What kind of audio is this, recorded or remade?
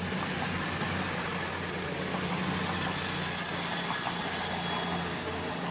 recorded